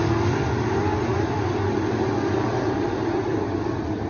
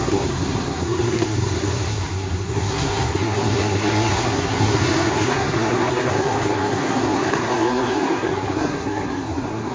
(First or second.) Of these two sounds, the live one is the first